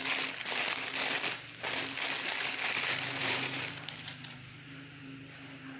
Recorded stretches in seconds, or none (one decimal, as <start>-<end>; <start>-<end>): 0.0-3.2; 3.7-5.8